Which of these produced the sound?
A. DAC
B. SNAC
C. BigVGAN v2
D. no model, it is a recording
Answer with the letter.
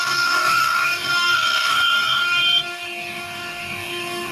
A